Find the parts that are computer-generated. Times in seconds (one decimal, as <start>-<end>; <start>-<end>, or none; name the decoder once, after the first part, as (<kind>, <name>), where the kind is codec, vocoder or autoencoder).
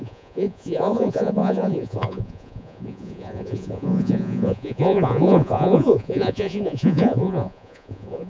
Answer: 0.0-8.3 (vocoder, Vocos)